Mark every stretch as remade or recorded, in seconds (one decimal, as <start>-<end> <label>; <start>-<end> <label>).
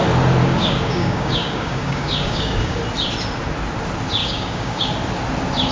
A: 0.0-0.4 recorded; 0.4-2.8 remade; 2.8-4.2 recorded; 4.2-4.8 remade; 4.8-5.7 recorded